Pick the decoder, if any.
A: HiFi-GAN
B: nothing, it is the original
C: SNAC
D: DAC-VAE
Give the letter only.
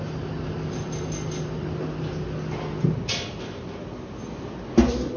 B